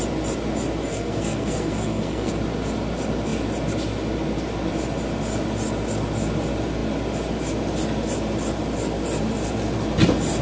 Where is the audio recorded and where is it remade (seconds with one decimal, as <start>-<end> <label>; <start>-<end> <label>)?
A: 0.0-0.9 recorded; 0.9-2.3 remade; 2.3-10.4 recorded